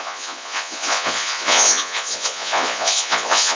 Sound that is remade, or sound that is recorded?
remade